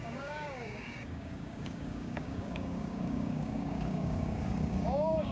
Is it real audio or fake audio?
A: fake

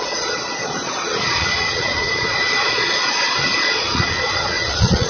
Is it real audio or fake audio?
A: fake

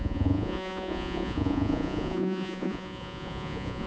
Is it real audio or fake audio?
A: fake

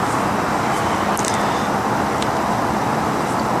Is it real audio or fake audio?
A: real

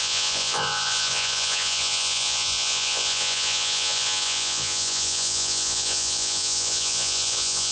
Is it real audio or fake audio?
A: fake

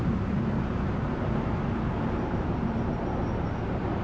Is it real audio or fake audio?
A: fake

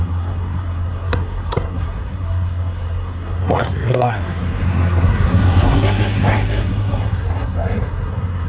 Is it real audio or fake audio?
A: fake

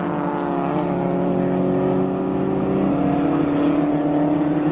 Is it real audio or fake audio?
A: real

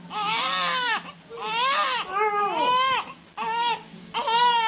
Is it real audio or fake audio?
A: real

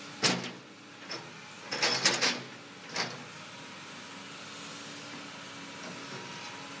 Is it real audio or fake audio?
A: real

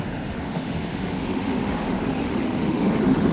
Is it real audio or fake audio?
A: fake